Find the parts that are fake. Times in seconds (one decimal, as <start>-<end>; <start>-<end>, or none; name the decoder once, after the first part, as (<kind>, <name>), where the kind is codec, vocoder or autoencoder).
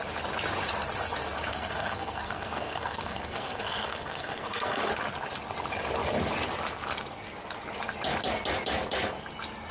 1.5-4.9 (codec, SNAC)